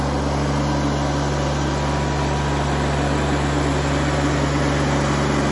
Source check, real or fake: real